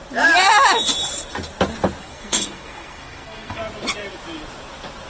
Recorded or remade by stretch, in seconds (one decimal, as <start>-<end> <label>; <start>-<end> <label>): 0.0-2.0 recorded; 2.0-3.6 remade; 3.6-5.1 recorded